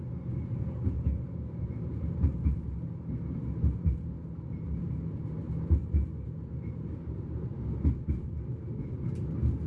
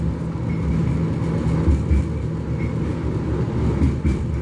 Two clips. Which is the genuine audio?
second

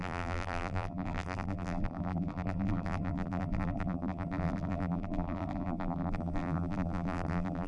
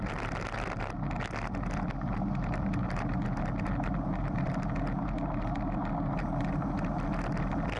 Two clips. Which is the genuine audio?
second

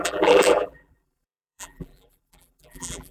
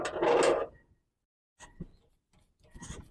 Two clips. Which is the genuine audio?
second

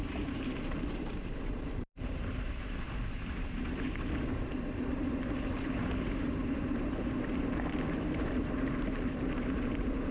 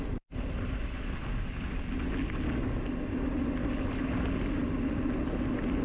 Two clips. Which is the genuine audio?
second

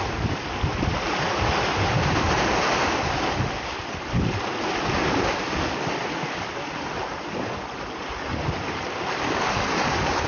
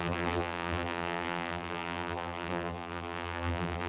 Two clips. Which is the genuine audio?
first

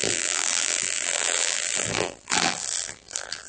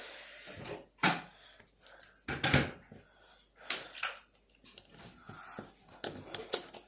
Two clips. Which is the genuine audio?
second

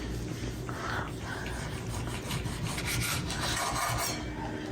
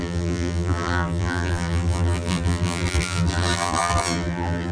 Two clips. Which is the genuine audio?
first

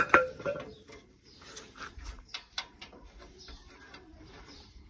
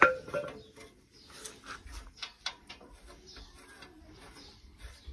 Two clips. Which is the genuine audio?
second